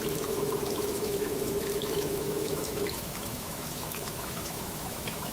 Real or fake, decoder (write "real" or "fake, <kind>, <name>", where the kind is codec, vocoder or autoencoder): fake, autoencoder, DAC-VAE